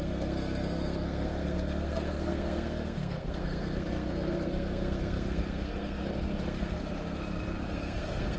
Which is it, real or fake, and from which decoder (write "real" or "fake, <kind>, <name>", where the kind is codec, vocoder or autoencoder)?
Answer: fake, codec, SNAC